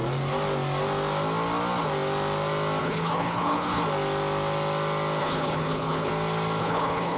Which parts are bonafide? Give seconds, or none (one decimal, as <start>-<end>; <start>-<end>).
0.0-2.8; 3.8-5.2; 6.1-6.6